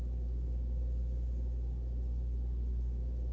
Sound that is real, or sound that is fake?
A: real